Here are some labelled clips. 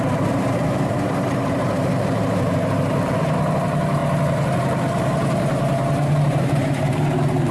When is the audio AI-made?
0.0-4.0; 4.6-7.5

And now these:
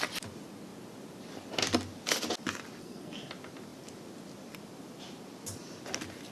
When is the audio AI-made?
2.8-3.3

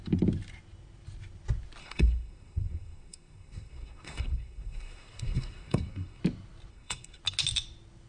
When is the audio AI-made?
1.8-6.2; 6.7-7.2

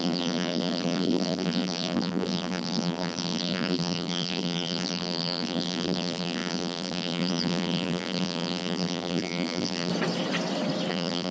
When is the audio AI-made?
0.0-9.9; 10.9-11.3

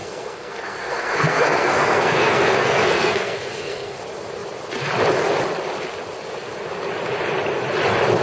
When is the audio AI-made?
0.0-4.0

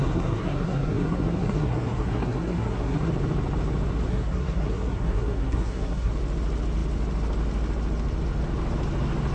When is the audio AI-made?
0.0-3.1; 4.1-6.1

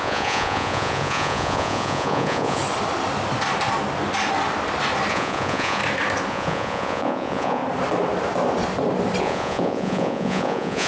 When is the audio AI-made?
0.0-2.6; 5.1-5.8; 6.3-7.6; 9.2-10.9